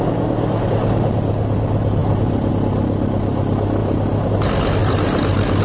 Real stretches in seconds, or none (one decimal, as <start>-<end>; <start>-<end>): 0.0-2.0; 2.5-3.8; 4.3-4.8